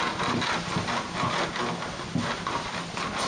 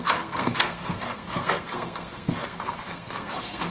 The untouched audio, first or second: first